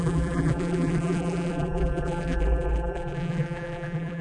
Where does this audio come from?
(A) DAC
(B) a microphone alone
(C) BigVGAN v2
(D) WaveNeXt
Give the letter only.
C